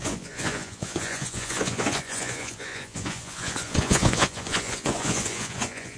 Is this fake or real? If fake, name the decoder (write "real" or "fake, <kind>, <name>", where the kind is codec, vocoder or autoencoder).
fake, vocoder, Vocos